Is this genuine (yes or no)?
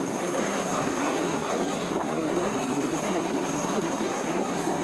no